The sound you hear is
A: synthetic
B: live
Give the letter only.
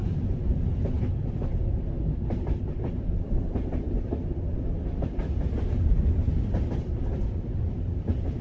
A